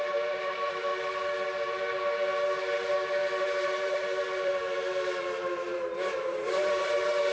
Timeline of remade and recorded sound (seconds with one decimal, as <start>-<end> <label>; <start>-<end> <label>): 0.0-0.9 remade; 0.9-3.4 recorded; 3.4-7.3 remade